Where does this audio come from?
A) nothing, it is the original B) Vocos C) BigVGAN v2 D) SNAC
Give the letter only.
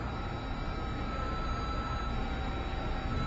A